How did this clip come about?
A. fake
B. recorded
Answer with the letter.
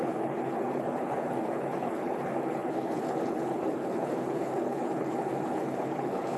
A